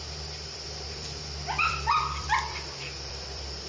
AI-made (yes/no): yes